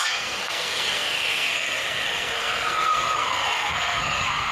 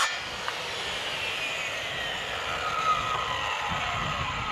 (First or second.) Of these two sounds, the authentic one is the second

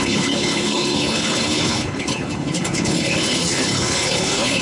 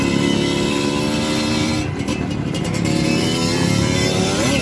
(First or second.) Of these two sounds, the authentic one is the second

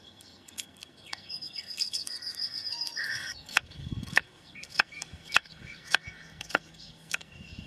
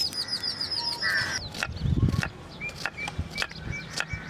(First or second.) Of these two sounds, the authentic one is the second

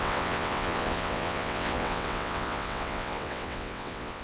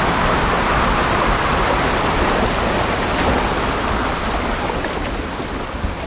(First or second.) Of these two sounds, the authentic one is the second